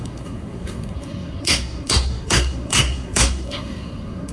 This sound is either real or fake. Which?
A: fake